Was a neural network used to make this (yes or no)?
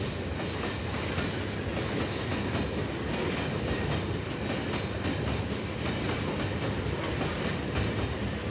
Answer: no